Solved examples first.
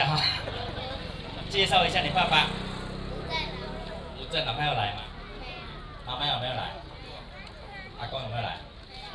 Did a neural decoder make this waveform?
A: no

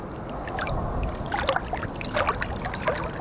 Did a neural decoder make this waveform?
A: no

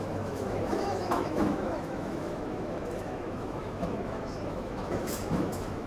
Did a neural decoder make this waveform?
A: yes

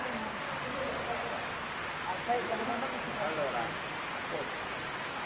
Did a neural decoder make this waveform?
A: no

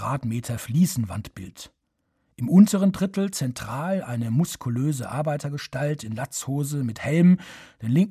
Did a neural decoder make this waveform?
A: no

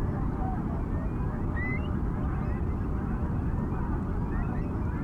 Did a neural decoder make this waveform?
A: no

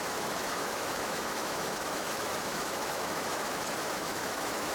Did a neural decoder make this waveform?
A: yes